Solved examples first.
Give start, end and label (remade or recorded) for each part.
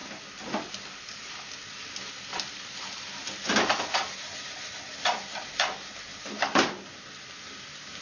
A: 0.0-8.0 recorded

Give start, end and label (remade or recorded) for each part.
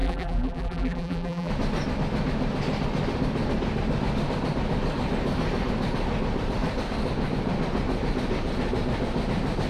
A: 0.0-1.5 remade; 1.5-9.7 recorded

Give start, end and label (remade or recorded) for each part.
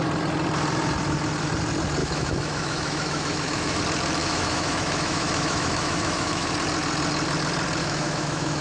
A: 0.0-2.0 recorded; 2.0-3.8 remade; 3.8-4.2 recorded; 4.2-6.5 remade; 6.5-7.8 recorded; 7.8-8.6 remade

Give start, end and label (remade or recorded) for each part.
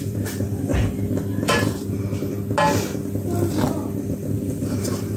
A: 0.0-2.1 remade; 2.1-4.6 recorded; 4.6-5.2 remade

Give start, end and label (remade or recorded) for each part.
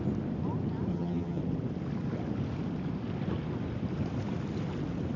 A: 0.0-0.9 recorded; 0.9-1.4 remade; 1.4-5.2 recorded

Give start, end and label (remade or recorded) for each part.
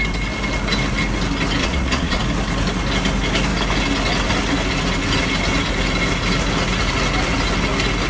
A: 0.0-1.6 recorded; 1.6-2.2 remade; 2.2-8.1 recorded